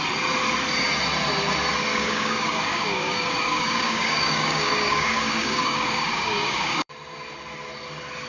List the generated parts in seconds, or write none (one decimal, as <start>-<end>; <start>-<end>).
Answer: 1.9-6.9